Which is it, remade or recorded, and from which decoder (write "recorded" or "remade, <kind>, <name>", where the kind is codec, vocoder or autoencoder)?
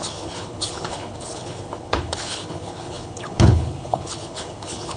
remade, codec, HILCodec